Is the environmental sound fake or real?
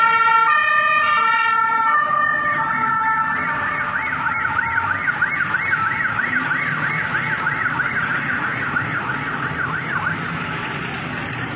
real